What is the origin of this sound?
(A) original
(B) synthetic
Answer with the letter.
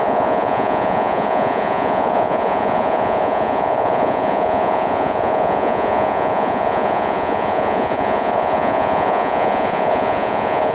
B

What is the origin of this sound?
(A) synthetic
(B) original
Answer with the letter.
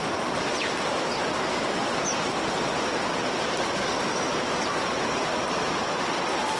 B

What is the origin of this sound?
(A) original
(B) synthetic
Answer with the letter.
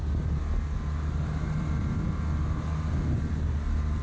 A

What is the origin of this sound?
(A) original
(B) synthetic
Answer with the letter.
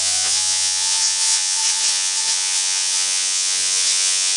B